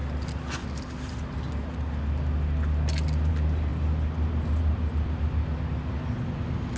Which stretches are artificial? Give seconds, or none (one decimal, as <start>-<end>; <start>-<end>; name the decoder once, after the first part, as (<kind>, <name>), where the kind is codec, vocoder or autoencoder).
none